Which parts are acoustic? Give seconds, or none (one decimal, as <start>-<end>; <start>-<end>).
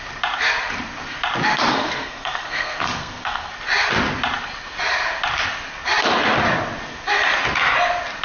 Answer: 0.0-1.7; 3.5-8.2